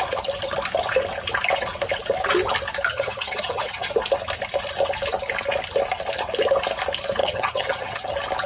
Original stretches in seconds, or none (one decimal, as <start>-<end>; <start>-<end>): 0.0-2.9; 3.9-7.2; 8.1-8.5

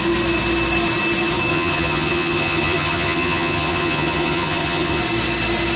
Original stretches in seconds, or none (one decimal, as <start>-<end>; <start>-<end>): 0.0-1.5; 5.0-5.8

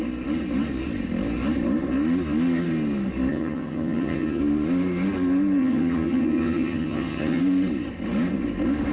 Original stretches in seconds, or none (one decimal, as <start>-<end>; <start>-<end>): 0.0-3.3; 4.4-5.6; 7.4-8.9

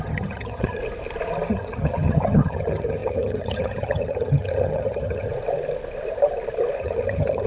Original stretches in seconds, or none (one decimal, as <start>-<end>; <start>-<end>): 0.8-1.5; 5.3-6.8

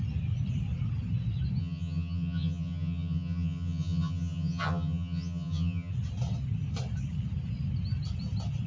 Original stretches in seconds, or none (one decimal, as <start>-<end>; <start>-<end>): 0.0-1.6; 5.9-8.7

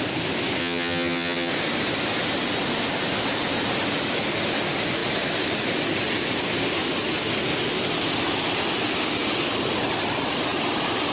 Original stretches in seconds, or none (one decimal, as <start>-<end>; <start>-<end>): 0.0-0.6; 1.5-11.1